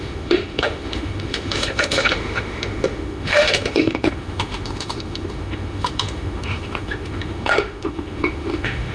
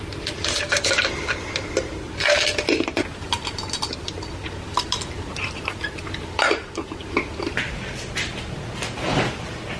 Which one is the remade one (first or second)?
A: first